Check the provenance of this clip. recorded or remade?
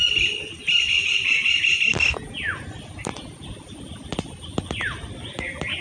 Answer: recorded